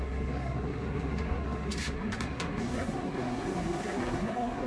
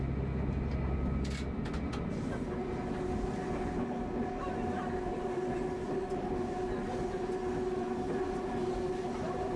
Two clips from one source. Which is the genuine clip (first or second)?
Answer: second